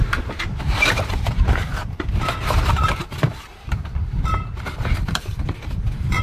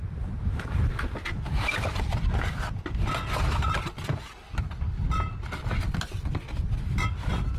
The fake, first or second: first